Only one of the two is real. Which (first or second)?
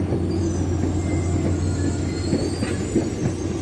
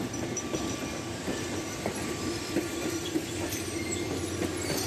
first